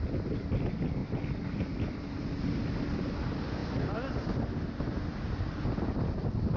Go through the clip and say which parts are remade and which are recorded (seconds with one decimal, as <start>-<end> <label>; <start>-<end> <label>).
0.0-6.6 recorded